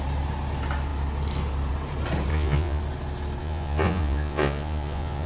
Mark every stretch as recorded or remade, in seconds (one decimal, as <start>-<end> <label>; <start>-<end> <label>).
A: 0.0-2.3 recorded; 2.3-2.8 remade; 2.8-3.4 recorded; 3.4-5.3 remade